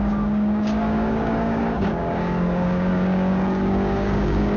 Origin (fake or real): fake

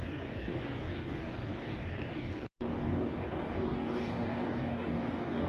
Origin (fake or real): fake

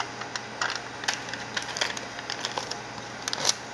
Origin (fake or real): real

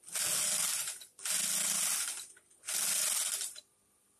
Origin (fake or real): real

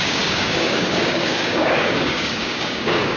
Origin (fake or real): fake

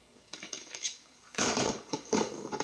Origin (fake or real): fake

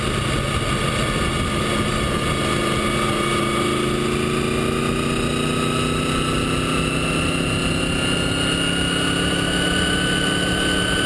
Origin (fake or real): real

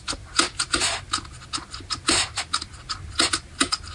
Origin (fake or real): real